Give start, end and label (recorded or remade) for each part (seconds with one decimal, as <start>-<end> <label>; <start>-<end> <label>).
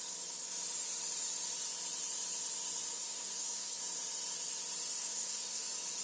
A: 0.0-2.9 recorded; 2.9-3.8 remade; 3.8-5.0 recorded; 5.0-5.6 remade; 5.6-6.0 recorded